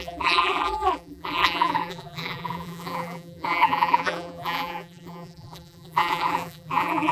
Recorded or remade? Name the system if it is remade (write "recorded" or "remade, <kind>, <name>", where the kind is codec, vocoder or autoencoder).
remade, vocoder, BigVGAN v2